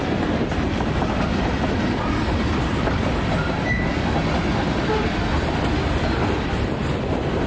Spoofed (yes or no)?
no